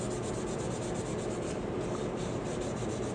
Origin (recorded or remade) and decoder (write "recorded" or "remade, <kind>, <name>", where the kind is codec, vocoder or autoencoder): recorded